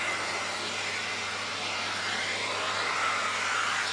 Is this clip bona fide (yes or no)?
yes